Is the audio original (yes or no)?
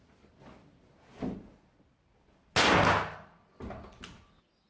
yes